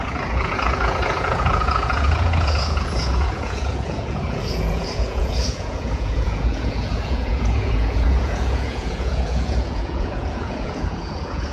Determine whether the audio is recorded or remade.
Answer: remade